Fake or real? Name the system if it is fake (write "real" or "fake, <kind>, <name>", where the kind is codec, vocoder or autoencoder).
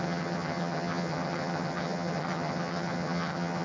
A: fake, vocoder, HiFi-GAN